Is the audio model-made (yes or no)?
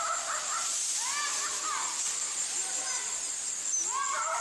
no